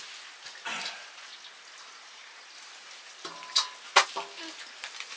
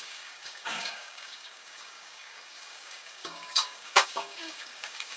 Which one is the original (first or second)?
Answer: first